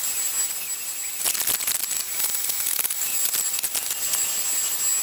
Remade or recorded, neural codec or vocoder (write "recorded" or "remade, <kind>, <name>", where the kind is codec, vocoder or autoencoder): recorded